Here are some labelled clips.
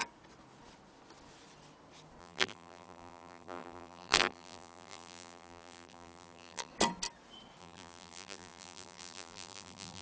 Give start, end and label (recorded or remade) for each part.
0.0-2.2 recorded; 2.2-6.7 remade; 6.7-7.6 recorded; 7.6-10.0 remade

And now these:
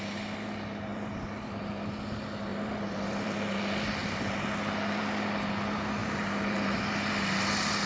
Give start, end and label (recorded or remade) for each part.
0.0-0.9 recorded; 0.9-1.6 remade; 1.6-2.5 recorded; 2.5-3.6 remade; 3.6-6.0 recorded; 6.0-7.1 remade; 7.1-7.9 recorded

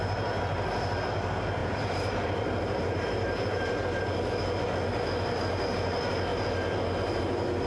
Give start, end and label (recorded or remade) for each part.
0.0-1.6 recorded; 1.6-4.0 remade; 4.0-7.7 recorded

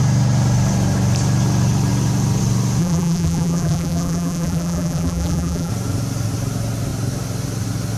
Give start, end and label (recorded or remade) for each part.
0.0-2.8 recorded; 2.8-5.7 remade; 5.7-8.0 recorded